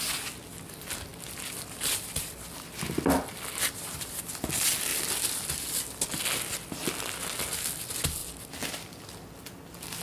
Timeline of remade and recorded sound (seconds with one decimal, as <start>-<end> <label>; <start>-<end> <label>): 0.0-1.1 recorded; 1.1-2.5 remade; 2.5-4.9 recorded; 4.9-5.5 remade; 5.5-10.0 recorded